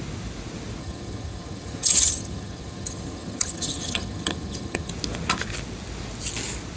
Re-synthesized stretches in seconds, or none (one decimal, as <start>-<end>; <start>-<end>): 0.8-4.9